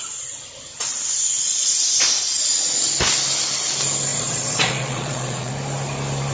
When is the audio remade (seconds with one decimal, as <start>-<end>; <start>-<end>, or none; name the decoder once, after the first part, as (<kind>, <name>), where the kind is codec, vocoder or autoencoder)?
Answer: 4.1-5.5 (vocoder, Vocos)